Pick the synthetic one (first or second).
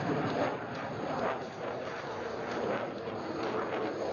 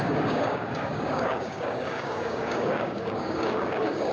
second